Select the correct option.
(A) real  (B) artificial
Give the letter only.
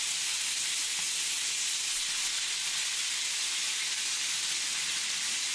A